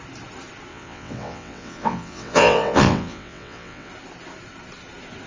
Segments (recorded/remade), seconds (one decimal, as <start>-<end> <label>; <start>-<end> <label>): 0.0-0.7 recorded; 0.7-3.9 remade; 3.9-5.3 recorded